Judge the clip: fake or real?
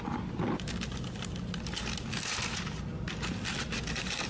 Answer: real